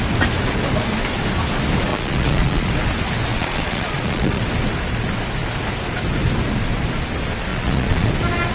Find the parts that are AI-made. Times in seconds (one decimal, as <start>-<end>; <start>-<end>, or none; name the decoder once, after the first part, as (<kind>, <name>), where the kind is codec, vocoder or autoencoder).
1.9-2.7 (vocoder, Vocos); 3.3-4.4; 7.5-8.1